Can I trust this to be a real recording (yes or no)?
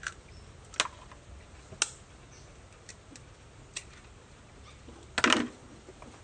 yes